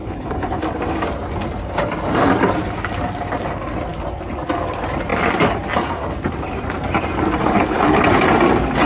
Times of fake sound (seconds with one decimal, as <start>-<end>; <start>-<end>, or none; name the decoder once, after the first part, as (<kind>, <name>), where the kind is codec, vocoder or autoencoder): 0.0-0.6 (codec, HILCodec); 7.4-8.0